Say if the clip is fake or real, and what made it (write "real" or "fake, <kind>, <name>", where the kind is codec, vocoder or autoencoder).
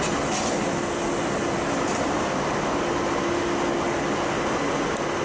real